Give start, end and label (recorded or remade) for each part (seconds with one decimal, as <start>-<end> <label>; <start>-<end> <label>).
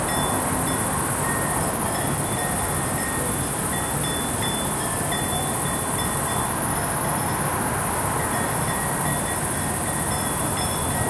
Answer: 0.0-7.5 recorded; 7.5-9.1 remade; 9.1-11.1 recorded